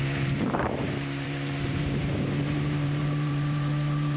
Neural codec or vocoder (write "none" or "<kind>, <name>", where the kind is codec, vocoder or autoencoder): vocoder, BigVGAN v2